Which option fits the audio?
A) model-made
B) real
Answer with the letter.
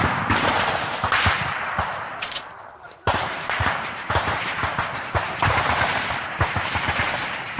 A